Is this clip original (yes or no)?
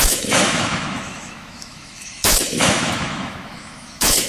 no